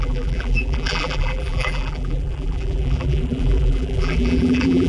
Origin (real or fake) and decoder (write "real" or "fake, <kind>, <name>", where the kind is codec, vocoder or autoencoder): fake, vocoder, BigVGAN v2